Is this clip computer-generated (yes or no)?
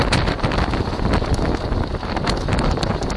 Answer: no